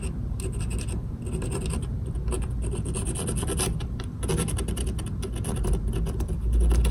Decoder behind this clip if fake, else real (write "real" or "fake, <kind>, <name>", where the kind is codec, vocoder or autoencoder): real